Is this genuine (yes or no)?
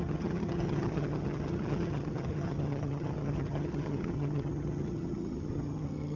no